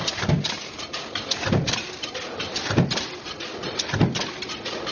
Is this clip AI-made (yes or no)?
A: no